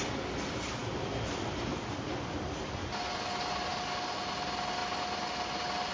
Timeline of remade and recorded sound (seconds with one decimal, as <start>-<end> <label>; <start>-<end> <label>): 0.0-5.9 recorded